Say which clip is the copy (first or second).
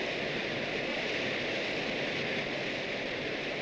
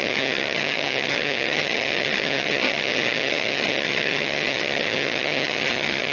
second